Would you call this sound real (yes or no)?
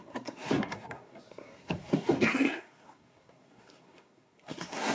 no